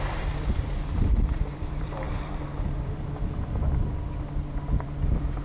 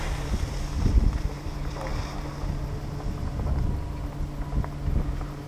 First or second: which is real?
second